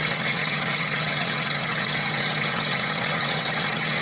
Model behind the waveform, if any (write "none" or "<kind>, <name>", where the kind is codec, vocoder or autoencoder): vocoder, WaveNeXt